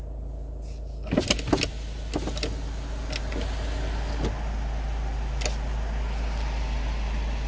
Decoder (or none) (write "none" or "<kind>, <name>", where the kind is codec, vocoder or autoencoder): none